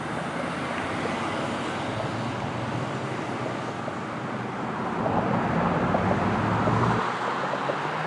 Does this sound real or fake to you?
real